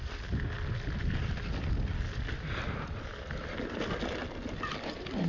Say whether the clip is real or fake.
real